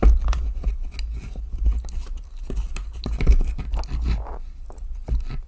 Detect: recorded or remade recorded